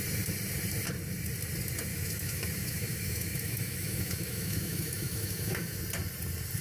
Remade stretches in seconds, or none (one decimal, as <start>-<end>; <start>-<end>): 1.9-5.8